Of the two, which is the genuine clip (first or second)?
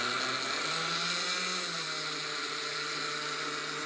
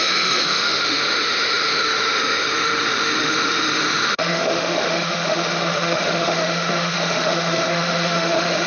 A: first